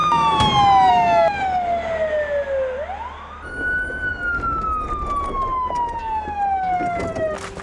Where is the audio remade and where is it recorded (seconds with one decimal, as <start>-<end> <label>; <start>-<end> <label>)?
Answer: 0.0-7.6 recorded